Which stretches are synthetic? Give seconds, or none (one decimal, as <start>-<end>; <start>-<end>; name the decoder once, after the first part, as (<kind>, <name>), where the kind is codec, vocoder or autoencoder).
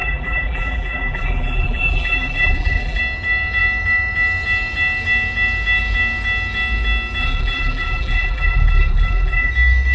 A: 0.0-3.0 (vocoder, BigVGAN v2); 7.2-9.5